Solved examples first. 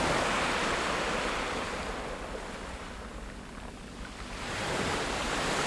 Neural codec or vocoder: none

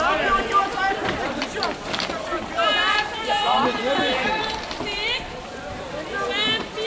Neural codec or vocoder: vocoder, BigVGAN v2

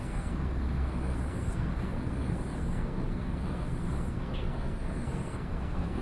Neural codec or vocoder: codec, SNAC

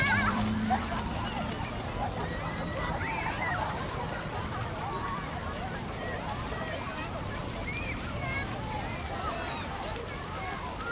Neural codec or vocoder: vocoder, BigVGAN v2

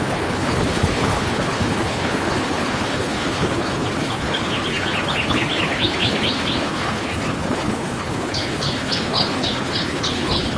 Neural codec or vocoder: codec, HILCodec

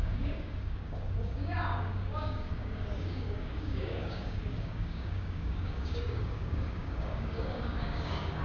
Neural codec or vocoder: codec, DAC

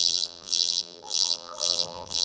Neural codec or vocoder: vocoder, BigVGAN v2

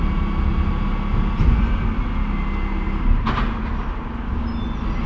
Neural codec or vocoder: none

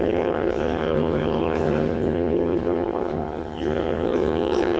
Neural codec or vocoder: vocoder, HiFi-GAN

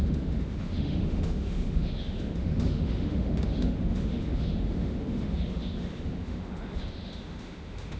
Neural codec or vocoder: autoencoder, DAC-VAE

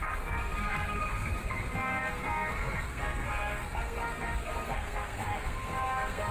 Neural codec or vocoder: codec, SNAC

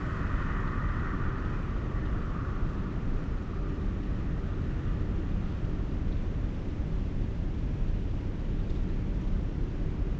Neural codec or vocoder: none